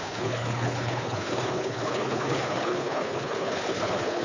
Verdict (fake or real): fake